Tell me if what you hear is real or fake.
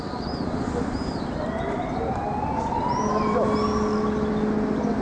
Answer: real